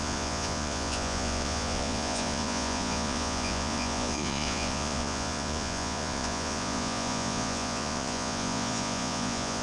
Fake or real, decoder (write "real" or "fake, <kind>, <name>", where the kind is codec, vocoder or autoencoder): fake, vocoder, Vocos